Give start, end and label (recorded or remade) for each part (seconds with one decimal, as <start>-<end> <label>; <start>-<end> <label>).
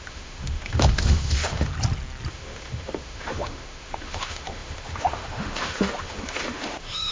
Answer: 0.0-1.7 remade; 1.7-2.3 recorded; 2.3-7.1 remade